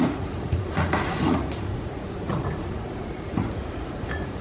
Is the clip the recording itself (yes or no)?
no